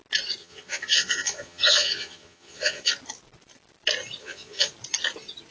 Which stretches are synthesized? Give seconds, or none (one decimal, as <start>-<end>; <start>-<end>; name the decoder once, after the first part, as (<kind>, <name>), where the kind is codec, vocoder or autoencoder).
0.4-2.9 (vocoder, Vocos); 4.2-4.7